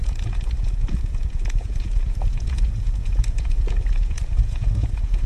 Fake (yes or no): yes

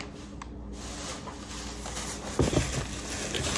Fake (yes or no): no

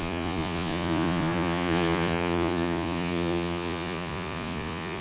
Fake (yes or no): yes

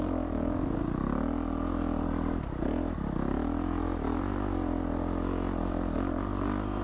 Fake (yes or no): no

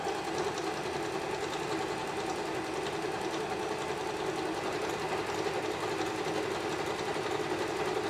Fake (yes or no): no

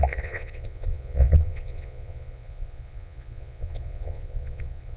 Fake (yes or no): yes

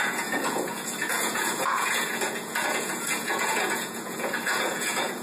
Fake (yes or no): yes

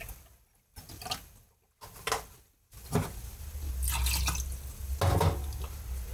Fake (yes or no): no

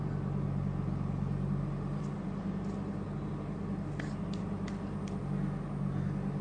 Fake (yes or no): no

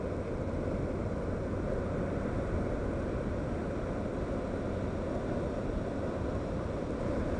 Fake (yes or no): no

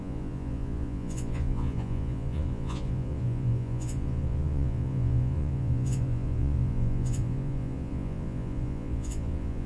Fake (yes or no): yes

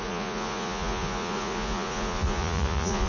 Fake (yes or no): yes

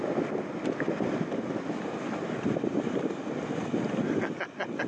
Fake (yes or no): no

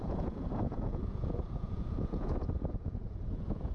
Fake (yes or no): yes